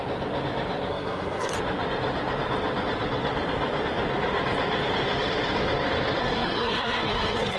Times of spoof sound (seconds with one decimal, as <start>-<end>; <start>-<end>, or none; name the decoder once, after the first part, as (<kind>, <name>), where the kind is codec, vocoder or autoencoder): 0.9-1.5 (codec, SNAC); 6.2-7.6